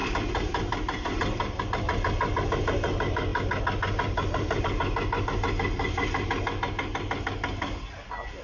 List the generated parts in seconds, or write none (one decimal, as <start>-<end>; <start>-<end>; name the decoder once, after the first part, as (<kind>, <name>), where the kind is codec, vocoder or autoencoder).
0.0-1.6 (vocoder, BigVGAN v2)